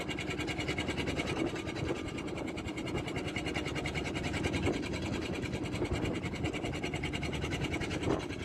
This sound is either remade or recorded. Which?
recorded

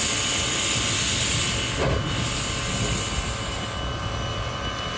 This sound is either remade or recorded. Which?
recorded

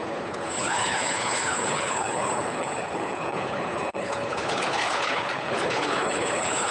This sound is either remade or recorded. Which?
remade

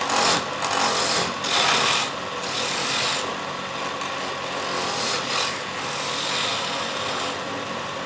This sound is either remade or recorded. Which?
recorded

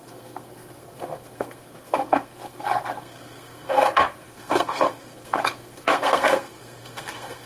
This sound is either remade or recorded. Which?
remade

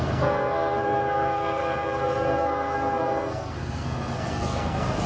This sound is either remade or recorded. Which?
remade